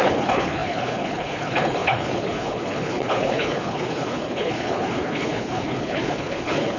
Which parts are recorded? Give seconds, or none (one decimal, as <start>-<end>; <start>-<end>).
none